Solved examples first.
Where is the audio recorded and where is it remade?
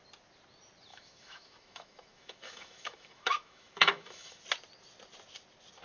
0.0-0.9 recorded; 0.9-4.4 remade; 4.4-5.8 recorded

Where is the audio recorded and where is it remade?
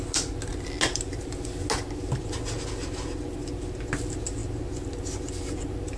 0.0-6.0 recorded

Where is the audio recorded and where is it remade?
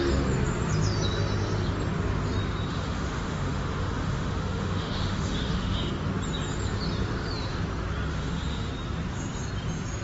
0.0-2.7 recorded; 2.7-5.9 remade; 5.9-8.1 recorded; 8.1-8.7 remade; 8.7-10.0 recorded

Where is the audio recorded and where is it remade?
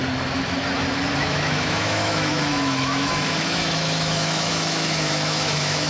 0.0-1.2 recorded; 1.2-5.9 remade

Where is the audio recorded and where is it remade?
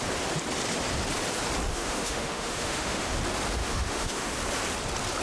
0.0-1.7 recorded; 1.7-3.1 remade; 3.1-3.6 recorded; 3.6-4.3 remade; 4.3-5.2 recorded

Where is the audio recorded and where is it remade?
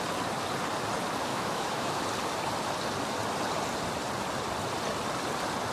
0.0-1.3 recorded; 1.3-2.0 remade; 2.0-5.7 recorded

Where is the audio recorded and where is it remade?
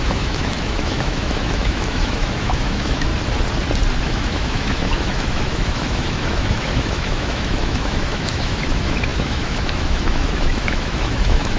0.0-3.1 remade; 3.1-4.0 recorded; 4.0-11.6 remade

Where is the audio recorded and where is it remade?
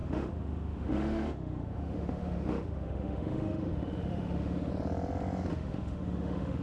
0.0-4.7 remade; 4.7-5.5 recorded; 5.5-6.6 remade